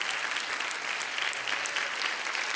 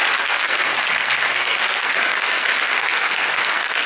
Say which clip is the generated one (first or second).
second